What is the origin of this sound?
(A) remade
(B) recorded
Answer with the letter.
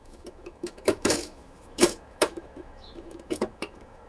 A